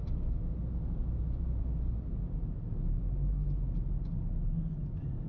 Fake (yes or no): no